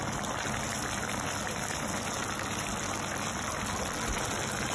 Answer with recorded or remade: recorded